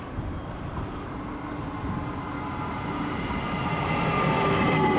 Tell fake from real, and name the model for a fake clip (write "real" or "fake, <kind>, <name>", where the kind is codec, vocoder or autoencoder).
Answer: real